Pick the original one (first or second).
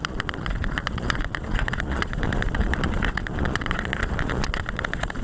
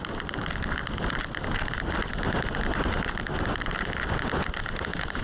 second